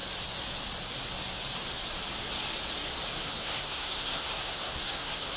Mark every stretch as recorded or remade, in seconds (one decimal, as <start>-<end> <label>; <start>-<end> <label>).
0.0-3.2 recorded; 3.2-5.4 remade